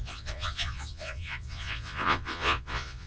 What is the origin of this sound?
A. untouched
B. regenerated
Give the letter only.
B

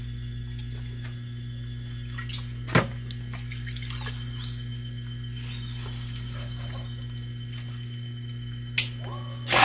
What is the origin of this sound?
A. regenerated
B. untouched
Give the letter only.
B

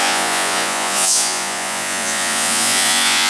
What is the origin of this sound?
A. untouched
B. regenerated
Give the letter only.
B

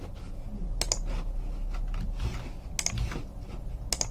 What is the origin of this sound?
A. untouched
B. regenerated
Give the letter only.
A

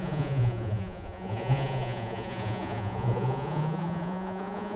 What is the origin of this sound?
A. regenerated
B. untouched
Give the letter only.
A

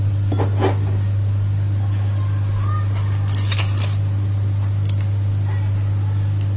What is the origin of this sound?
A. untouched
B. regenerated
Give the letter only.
A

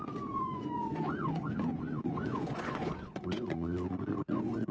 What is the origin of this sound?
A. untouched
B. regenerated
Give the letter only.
B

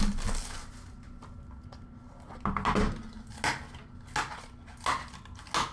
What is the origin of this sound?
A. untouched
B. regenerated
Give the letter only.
A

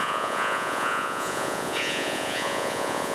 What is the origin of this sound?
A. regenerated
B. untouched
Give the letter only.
A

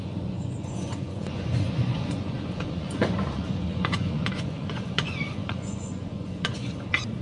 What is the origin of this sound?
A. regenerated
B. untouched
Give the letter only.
A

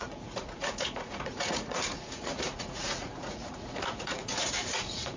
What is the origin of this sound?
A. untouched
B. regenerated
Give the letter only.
B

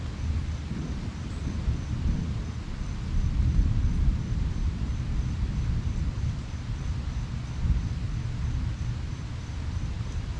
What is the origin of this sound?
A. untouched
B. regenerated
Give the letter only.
A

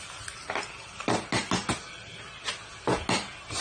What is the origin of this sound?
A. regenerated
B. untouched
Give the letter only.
B